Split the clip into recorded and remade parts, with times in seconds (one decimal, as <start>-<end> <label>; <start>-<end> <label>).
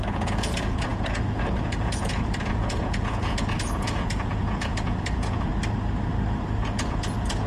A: 0.0-5.5 remade; 5.5-6.5 recorded; 6.5-7.5 remade